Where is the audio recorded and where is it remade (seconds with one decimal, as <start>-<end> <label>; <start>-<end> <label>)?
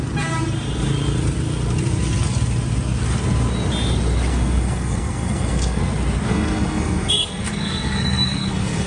0.0-4.3 recorded; 4.3-5.8 remade; 5.8-6.3 recorded; 6.3-8.9 remade